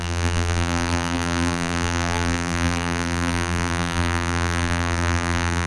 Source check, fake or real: fake